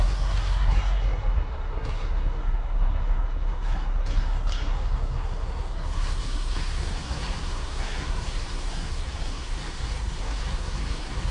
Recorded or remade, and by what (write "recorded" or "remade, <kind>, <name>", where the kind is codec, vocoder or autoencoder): remade, codec, SNAC